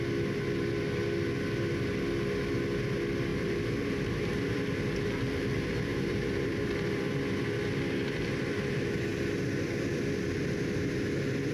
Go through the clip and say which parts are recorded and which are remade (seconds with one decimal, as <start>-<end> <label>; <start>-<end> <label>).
0.0-3.3 recorded; 3.3-7.1 remade; 7.1-11.5 recorded